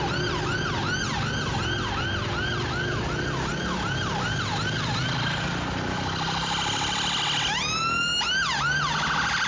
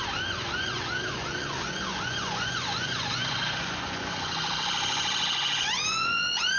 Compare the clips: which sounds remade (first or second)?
second